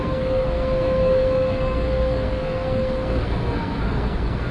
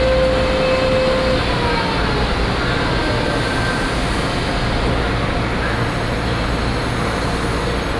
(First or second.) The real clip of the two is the second